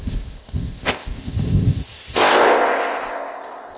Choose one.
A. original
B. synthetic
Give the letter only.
B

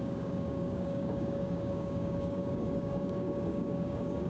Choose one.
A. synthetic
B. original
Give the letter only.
A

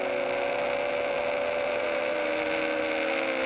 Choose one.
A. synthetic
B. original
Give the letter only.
B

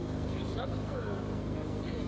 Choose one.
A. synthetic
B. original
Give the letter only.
A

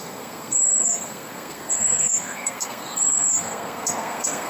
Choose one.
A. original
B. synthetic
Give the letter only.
B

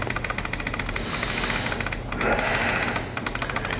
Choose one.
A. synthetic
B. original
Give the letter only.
B